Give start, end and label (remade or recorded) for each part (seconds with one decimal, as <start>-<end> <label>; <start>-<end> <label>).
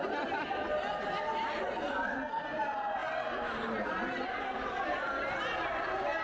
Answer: 0.0-6.2 recorded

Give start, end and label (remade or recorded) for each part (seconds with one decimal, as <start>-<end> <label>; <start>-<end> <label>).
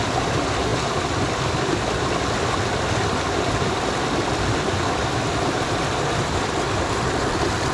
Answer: 0.0-7.7 recorded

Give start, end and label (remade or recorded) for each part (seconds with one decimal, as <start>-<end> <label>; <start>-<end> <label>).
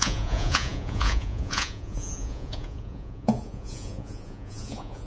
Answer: 0.0-5.1 remade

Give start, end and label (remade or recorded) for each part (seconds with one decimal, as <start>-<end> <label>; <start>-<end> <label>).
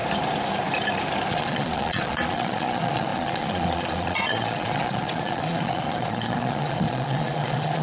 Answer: 0.0-1.3 recorded; 1.3-7.8 remade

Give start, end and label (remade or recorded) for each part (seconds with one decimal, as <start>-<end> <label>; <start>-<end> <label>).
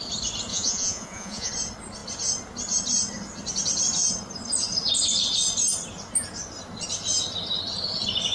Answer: 0.0-0.5 recorded; 0.5-1.5 remade; 1.5-8.3 recorded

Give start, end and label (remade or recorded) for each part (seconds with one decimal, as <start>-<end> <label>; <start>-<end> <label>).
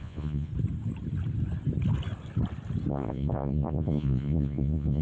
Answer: 0.0-0.5 remade; 0.5-2.9 recorded; 2.9-5.0 remade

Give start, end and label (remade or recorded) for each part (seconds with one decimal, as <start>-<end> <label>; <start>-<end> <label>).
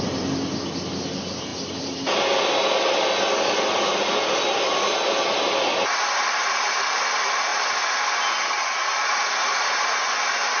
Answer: 0.0-9.2 recorded; 9.2-9.8 remade; 9.8-10.6 recorded